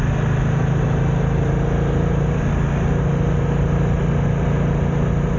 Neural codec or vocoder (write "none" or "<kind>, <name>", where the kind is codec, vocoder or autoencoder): none